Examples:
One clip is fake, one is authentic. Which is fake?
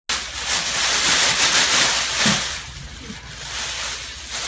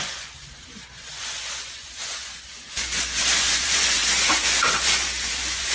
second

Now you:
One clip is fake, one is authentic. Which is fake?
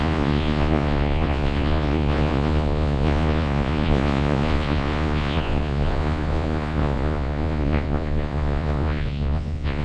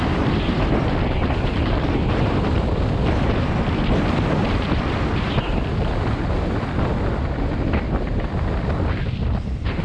first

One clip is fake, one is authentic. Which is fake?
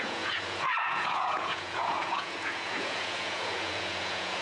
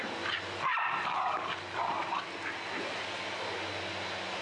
first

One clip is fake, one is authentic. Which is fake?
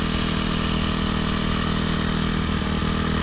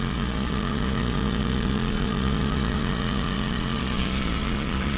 second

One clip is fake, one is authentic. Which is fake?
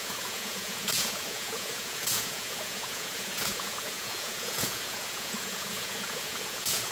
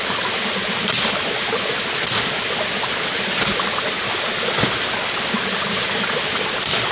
first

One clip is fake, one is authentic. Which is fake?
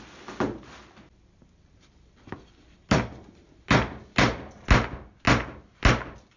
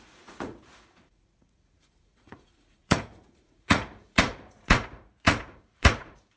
second